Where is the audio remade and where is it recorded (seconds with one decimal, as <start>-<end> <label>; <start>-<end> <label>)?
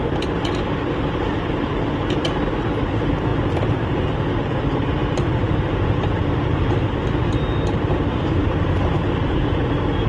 0.0-8.4 recorded; 8.4-8.9 remade; 8.9-10.1 recorded